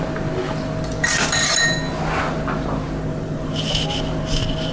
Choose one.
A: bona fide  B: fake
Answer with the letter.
A